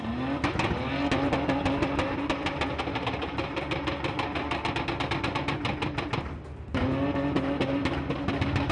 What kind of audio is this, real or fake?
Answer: real